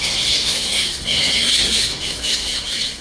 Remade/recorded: remade